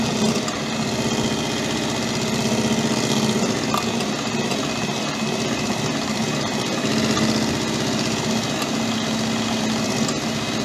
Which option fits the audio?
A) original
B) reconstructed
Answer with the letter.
A